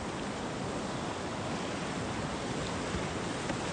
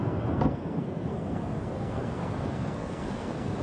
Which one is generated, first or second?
second